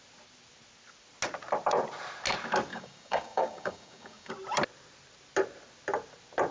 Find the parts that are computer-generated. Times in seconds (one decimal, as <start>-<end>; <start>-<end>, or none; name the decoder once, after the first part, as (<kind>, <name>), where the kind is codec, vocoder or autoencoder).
2.7-4.3 (codec, DAC)